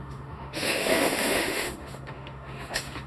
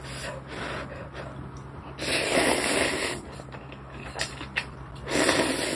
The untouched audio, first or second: second